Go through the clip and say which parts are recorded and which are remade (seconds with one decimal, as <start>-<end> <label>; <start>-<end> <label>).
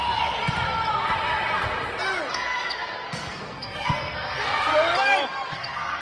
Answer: 0.0-2.3 recorded; 2.3-4.7 remade; 4.7-5.5 recorded; 5.5-6.0 remade